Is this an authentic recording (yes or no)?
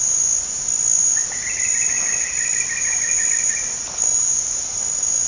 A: yes